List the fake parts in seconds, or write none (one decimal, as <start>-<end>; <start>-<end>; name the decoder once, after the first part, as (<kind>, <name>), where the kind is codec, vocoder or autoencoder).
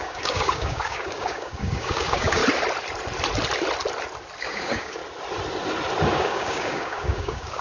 0.0-2.4 (codec, DAC); 4.4-5.0; 6.1-7.6